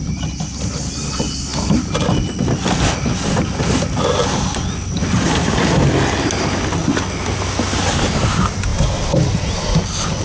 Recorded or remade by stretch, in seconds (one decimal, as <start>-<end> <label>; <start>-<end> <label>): 0.0-10.2 recorded